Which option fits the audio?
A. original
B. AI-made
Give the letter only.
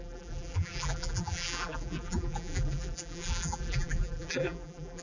B